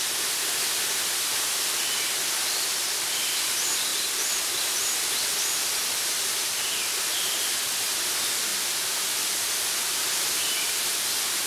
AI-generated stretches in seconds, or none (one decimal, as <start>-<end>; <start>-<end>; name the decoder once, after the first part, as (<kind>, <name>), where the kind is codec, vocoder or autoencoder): 3.9-4.6 (vocoder, BigVGAN v2)